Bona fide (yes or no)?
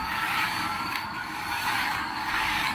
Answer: no